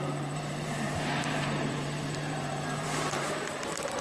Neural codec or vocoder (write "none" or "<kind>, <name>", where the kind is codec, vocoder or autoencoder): vocoder, BigVGAN v2